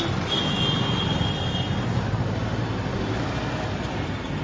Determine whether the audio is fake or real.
real